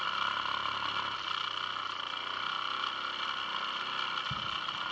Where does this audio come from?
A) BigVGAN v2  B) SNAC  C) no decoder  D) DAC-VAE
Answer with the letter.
C